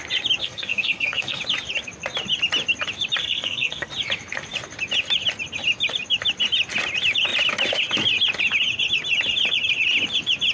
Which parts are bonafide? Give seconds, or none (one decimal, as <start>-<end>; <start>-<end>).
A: 0.0-0.4; 1.4-3.2; 3.9-10.5